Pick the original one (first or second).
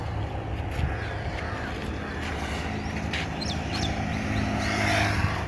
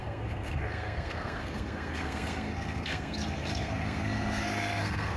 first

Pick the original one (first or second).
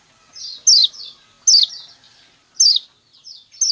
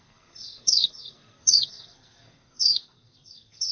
first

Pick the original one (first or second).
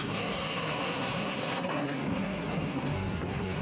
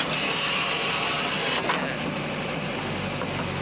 second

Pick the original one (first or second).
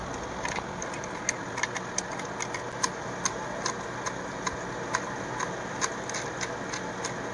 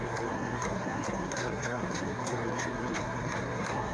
first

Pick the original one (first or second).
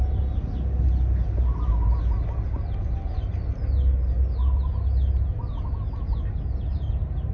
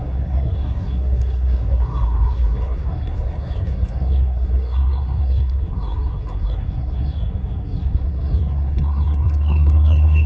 first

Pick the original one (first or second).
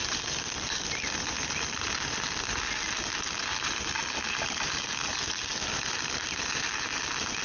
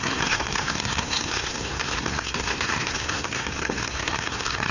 first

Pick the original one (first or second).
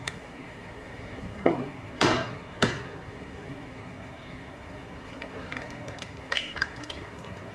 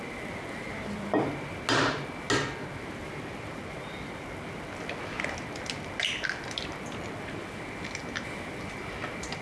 second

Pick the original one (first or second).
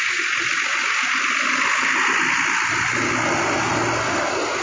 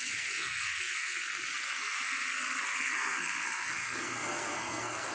first